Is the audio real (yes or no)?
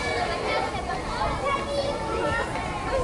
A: yes